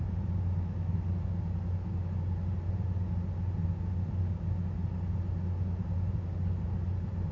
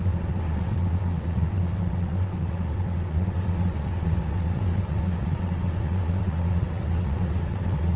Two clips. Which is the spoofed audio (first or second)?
second